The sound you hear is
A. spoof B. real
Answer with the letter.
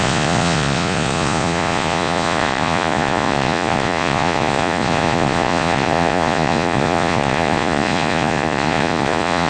A